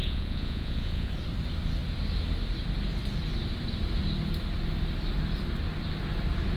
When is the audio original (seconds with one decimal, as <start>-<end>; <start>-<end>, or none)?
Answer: 1.1-6.6